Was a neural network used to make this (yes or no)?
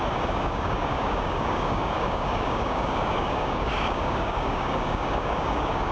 yes